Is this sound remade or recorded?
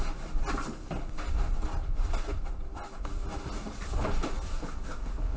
recorded